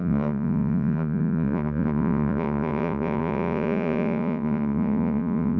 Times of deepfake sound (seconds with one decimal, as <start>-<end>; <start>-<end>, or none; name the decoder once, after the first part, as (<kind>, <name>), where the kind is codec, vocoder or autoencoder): 0.0-5.6 (vocoder, Vocos)